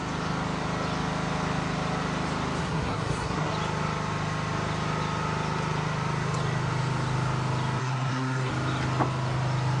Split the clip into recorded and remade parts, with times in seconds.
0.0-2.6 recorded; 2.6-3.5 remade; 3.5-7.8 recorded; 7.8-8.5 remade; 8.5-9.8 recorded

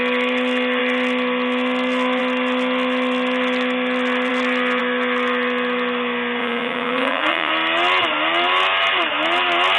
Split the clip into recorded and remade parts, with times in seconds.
0.0-6.4 recorded; 6.4-7.5 remade; 7.5-9.8 recorded